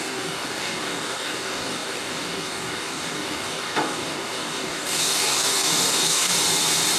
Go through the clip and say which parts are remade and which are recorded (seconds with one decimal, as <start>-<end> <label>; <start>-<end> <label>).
0.0-6.3 remade; 6.3-7.0 recorded